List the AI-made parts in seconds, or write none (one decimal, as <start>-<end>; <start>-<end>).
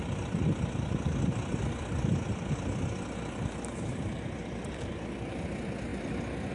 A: none